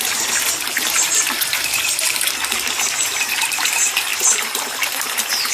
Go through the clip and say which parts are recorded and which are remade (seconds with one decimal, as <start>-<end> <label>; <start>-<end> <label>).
0.0-5.5 recorded